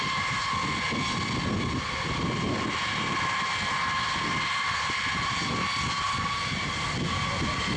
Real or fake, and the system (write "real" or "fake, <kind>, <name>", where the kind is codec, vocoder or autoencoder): real